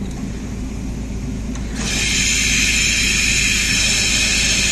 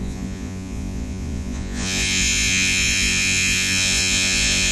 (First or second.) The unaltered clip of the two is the first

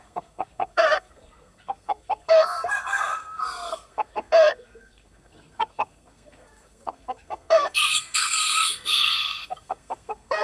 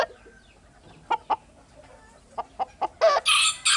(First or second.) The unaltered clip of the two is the second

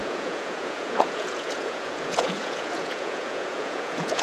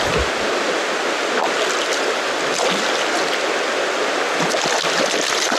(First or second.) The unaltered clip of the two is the second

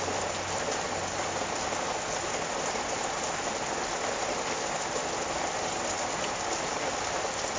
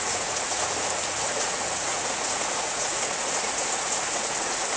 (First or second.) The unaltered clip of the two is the first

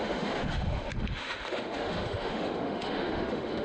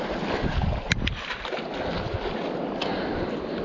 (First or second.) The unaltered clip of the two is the second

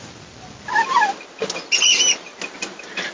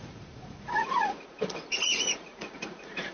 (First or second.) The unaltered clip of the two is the first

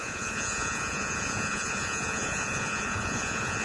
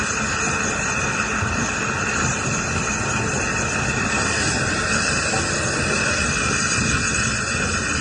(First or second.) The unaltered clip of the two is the second